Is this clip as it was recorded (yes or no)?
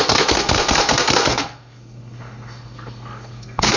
no